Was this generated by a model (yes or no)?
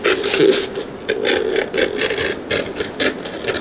no